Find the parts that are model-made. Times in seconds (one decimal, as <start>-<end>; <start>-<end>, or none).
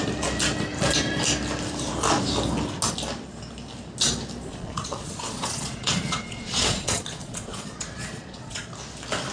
4.5-8.7